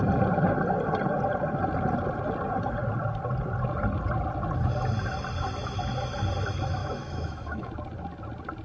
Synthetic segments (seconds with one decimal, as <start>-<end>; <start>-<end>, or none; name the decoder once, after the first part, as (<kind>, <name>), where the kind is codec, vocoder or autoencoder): 6.8-7.7 (autoencoder, DAC-VAE)